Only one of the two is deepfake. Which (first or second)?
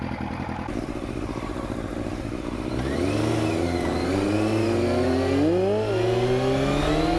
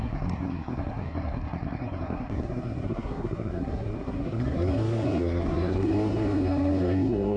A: second